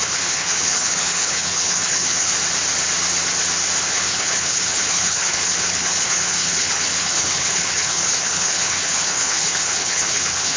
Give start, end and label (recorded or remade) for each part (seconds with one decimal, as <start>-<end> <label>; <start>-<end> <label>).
0.0-2.3 remade; 2.3-3.8 recorded; 3.8-10.6 remade

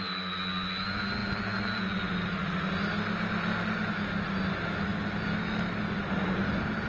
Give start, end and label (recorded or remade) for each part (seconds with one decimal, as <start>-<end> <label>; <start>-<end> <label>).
0.0-6.9 recorded

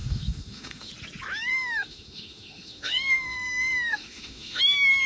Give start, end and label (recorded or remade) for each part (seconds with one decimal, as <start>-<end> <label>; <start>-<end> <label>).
0.0-0.9 remade; 0.9-1.5 recorded; 1.5-4.6 remade; 4.6-5.1 recorded

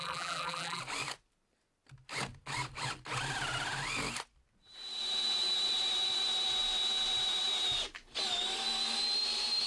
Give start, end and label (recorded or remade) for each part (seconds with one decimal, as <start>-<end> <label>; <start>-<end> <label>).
0.0-0.8 remade; 0.8-9.7 recorded

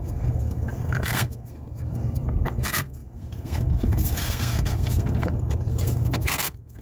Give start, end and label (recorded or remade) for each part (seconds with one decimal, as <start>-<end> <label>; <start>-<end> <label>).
0.0-6.8 remade

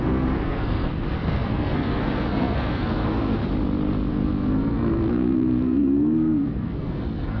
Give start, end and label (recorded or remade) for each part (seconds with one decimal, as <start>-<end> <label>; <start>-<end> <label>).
0.0-3.4 remade; 3.4-4.1 recorded; 4.1-7.4 remade